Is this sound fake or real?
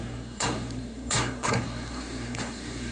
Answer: fake